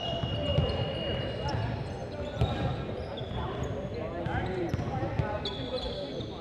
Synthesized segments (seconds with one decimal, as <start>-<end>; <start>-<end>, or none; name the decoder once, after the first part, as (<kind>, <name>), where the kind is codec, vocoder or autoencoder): none